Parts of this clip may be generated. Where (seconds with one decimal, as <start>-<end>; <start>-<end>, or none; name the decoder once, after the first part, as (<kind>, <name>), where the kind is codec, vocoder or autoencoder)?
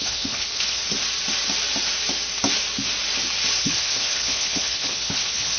0.0-0.8 (codec, HILCodec); 3.6-5.6